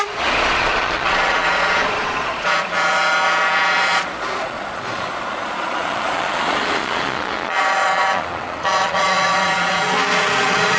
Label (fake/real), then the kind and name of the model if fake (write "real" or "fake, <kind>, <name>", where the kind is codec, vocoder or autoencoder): fake, vocoder, Vocos